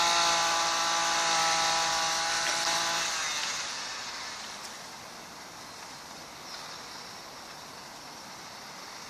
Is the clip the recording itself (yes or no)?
yes